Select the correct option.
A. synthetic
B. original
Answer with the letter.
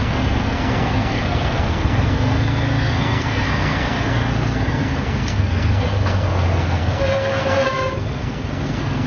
A